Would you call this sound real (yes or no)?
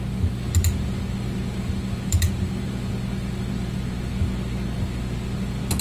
yes